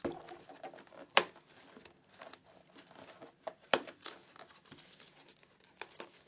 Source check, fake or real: real